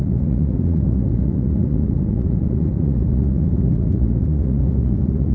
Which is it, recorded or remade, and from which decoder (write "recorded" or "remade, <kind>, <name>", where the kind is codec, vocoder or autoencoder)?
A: remade, vocoder, Vocos